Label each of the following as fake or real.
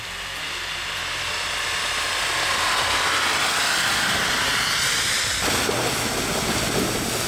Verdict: real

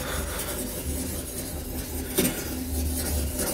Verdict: real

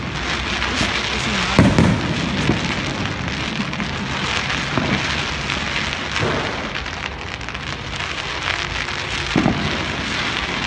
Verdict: real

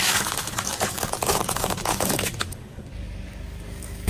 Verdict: fake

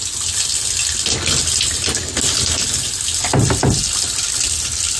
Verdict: real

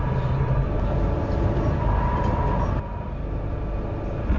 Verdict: real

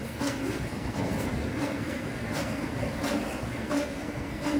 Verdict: fake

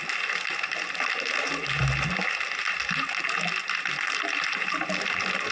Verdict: real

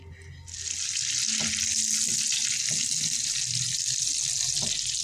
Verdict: real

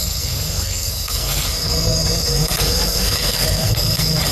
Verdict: fake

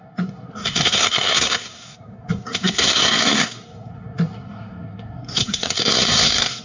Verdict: fake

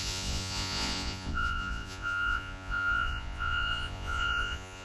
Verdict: fake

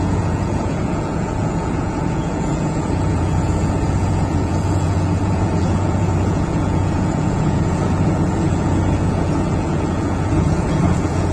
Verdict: fake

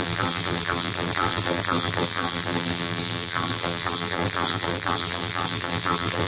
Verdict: fake